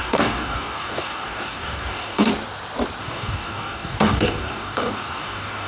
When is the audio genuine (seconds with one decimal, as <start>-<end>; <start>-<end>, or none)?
2.3-3.0